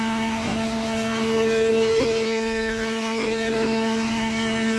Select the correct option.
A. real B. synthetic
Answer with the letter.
B